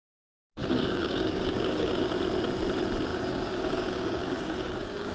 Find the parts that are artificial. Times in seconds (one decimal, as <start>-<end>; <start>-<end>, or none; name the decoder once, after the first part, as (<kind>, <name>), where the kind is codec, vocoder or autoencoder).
0.6-2.1 (codec, DAC); 3.1-5.1

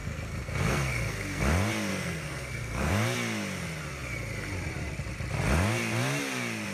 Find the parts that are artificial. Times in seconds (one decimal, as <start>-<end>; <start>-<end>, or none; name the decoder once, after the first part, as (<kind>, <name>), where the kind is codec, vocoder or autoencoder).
0.0-1.4 (codec, SNAC); 1.9-2.9

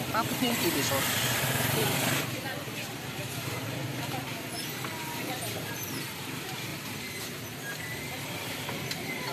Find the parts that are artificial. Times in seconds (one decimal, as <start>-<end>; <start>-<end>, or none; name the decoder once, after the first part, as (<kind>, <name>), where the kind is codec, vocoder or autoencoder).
0.0-3.9 (vocoder, BigVGAN v2); 5.2-6.7; 7.2-9.3

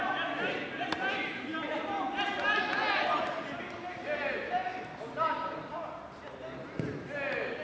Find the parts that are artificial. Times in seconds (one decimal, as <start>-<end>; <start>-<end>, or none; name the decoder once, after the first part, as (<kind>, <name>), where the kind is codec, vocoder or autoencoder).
none

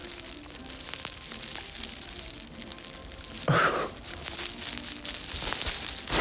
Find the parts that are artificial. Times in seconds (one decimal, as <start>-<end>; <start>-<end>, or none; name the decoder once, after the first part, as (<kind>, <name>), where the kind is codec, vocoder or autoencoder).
3.0-4.4 (vocoder, BigVGAN v2)

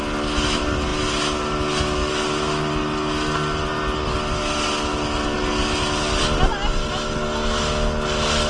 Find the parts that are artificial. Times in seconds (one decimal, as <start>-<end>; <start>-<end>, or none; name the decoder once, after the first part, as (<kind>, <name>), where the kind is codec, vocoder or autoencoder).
none